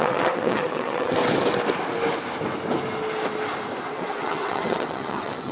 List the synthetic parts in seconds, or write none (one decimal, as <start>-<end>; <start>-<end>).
0.0-1.2; 3.9-5.5